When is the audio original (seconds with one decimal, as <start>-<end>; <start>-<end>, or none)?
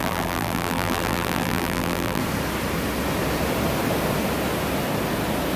2.2-5.6